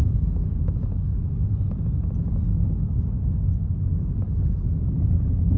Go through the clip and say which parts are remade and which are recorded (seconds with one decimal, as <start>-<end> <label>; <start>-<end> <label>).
0.0-1.5 remade; 1.5-2.5 recorded; 2.5-3.5 remade; 3.5-3.9 recorded; 3.9-5.6 remade